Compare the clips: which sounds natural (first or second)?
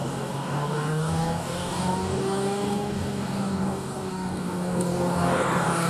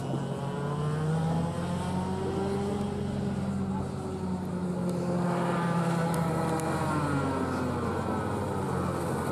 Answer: second